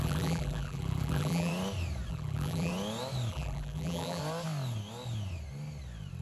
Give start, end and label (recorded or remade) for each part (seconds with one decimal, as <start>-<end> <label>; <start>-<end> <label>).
0.0-1.5 remade; 1.5-2.1 recorded; 2.1-2.7 remade; 2.7-3.3 recorded; 3.3-4.2 remade; 4.2-6.2 recorded